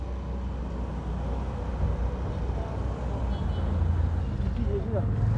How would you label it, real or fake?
real